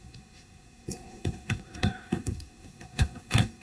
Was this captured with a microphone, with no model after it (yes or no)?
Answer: no